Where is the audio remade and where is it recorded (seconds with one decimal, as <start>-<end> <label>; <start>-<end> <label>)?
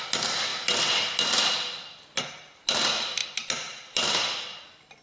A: 0.0-5.0 recorded